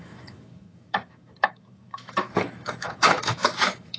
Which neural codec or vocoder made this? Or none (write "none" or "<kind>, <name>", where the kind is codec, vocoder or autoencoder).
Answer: autoencoder, DAC-VAE